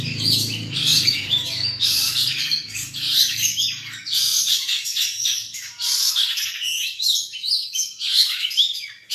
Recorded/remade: remade